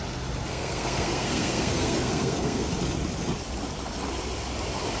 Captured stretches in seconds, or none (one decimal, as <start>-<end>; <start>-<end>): 0.0-0.4; 2.7-5.0